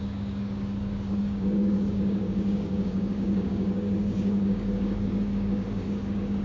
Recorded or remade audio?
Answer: remade